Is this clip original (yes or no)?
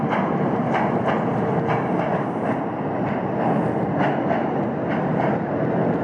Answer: yes